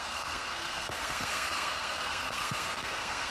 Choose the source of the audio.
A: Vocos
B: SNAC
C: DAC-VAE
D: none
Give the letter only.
B